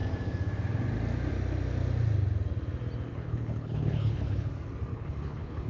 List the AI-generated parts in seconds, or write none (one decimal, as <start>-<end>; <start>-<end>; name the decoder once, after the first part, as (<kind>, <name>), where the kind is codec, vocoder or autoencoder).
3.1-4.5 (codec, HILCodec); 4.9-5.7

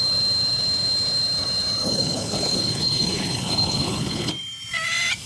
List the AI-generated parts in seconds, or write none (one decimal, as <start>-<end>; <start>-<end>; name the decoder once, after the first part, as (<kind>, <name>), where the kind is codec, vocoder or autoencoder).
1.8-4.3 (codec, HILCodec)

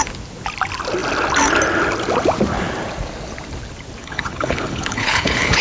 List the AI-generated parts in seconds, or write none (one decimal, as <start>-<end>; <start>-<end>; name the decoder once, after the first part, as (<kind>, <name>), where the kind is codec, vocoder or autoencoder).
4.0-5.6 (codec, HILCodec)

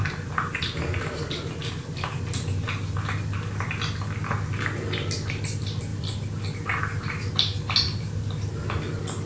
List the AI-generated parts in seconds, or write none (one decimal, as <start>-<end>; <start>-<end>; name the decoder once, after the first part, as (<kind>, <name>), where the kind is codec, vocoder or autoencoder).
none

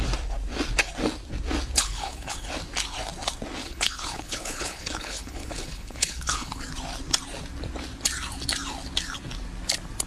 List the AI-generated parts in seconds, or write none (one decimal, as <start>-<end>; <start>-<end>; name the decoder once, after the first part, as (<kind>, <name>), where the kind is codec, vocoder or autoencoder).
1.8-2.5 (codec, HILCodec); 3.6-6.6

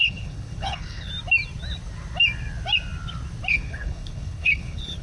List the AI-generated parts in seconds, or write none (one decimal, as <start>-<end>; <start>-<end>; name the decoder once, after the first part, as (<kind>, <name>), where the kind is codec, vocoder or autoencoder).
0.0-1.1 (codec, HILCodec); 3.5-5.0